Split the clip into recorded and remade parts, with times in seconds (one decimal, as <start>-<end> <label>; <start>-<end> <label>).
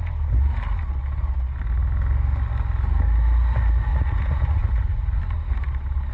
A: 0.0-3.9 recorded; 3.9-5.2 remade; 5.2-6.1 recorded